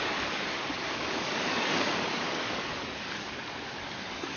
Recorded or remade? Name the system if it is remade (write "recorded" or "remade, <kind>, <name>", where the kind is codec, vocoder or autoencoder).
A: remade, codec, DAC